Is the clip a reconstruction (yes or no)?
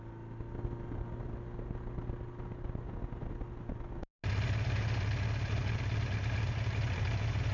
no